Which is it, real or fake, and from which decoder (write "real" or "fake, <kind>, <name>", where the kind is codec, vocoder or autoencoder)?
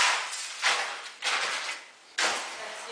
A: real